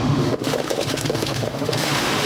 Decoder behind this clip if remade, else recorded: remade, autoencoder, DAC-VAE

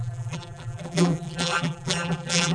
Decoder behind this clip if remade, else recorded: remade, vocoder, BigVGAN v2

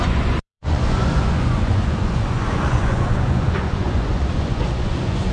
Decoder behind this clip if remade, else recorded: remade, vocoder, Vocos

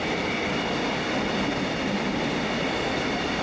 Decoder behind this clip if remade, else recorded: recorded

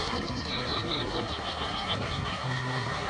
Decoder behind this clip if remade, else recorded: remade, codec, SNAC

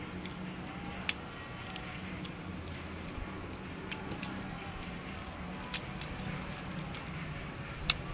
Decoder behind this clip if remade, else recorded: recorded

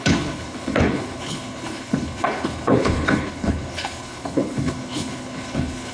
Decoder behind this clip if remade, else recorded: remade, codec, HILCodec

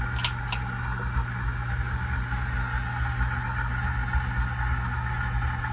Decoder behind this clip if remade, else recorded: recorded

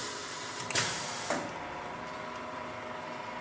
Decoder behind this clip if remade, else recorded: recorded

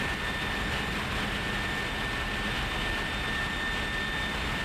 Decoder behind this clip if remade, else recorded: recorded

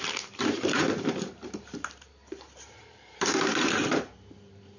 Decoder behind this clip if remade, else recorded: remade, vocoder, BigVGAN v2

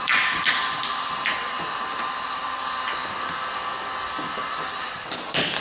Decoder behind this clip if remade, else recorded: remade, vocoder, BigVGAN v2